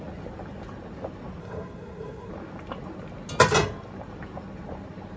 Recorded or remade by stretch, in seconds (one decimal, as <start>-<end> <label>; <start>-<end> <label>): 0.0-1.4 recorded; 1.4-2.3 remade; 2.3-5.2 recorded